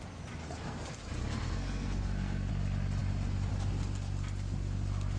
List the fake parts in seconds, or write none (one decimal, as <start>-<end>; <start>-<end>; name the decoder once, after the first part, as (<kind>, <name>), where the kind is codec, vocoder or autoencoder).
0.4-0.9 (codec, SNAC); 1.4-2.5